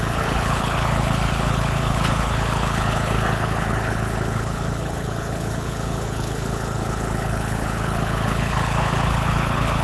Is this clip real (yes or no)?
no